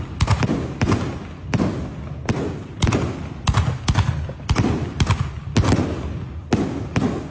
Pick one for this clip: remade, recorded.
recorded